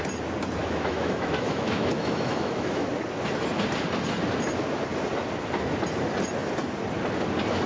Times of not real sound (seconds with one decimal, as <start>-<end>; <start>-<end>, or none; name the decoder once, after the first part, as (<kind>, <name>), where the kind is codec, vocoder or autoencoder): 0.6-2.9 (autoencoder, DAC-VAE)